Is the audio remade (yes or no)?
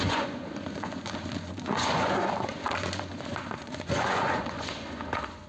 yes